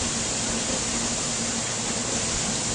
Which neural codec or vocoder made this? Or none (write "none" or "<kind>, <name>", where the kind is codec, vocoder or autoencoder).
none